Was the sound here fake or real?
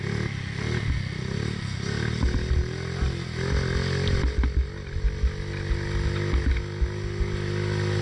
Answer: real